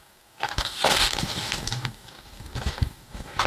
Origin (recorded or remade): remade